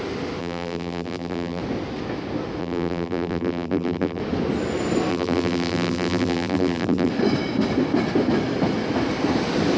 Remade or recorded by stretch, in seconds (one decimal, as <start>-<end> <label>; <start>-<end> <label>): 0.0-0.4 recorded; 0.4-1.6 remade; 1.6-2.6 recorded; 2.6-4.2 remade; 4.2-5.1 recorded; 5.1-7.1 remade; 7.1-9.8 recorded